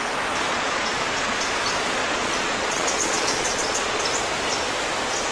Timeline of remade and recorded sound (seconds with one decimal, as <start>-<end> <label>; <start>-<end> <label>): 0.0-0.5 recorded; 0.5-1.4 remade; 1.4-2.0 recorded; 2.0-4.0 remade; 4.0-5.3 recorded